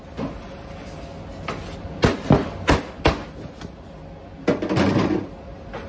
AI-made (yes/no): no